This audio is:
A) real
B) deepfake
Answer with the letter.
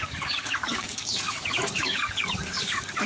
B